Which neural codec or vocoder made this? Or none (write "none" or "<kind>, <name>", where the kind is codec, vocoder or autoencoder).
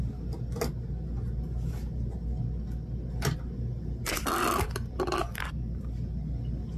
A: none